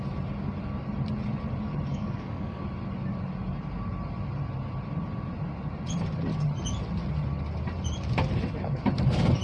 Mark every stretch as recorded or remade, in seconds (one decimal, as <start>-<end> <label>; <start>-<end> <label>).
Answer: 0.0-1.9 recorded; 1.9-2.6 remade; 2.6-9.4 recorded